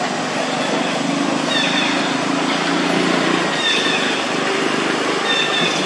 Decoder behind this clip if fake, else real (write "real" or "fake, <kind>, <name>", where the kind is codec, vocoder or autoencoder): real